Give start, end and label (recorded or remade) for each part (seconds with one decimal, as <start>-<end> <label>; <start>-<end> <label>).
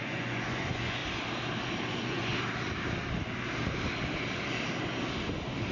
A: 0.0-1.0 remade; 1.0-1.9 recorded; 1.9-2.3 remade; 2.3-5.7 recorded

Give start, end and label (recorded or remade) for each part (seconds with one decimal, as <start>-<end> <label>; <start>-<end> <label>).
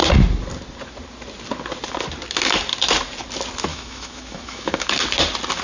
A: 0.0-3.7 recorded; 3.7-4.9 remade; 4.9-5.6 recorded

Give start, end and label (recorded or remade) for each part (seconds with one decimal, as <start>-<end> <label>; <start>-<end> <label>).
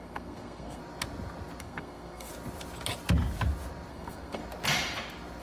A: 0.0-0.8 remade; 0.8-1.6 recorded; 1.6-2.3 remade; 2.3-3.9 recorded; 3.9-4.4 remade; 4.4-5.4 recorded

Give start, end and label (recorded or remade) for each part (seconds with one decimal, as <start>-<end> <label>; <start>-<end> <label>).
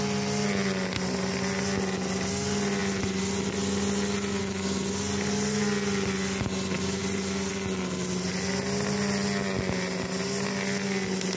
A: 0.0-7.0 recorded; 7.0-7.5 remade; 7.5-11.4 recorded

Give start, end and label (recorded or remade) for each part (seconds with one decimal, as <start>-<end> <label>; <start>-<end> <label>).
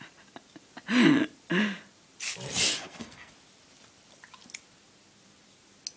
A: 0.0-2.7 recorded; 2.7-3.3 remade; 3.3-6.0 recorded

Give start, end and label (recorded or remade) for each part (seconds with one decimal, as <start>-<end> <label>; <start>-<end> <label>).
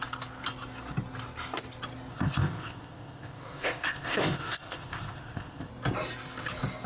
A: 0.0-2.1 recorded; 2.1-5.7 remade; 5.7-6.9 recorded